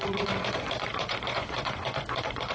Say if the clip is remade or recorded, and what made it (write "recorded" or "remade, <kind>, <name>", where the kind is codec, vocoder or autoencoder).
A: remade, vocoder, Vocos